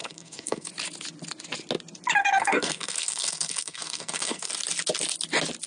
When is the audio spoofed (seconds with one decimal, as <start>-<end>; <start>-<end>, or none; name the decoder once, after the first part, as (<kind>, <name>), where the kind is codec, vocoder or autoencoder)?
0.0-0.7 (codec, SNAC); 2.2-4.5

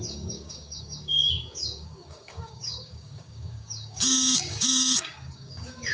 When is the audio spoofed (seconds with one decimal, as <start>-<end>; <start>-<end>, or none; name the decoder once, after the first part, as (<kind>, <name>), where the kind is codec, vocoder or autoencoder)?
0.0-5.9 (codec, DAC)

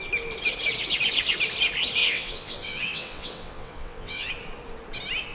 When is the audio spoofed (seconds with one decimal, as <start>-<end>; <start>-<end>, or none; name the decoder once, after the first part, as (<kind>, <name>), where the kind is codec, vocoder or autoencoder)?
2.0-4.3 (vocoder, WaveNeXt)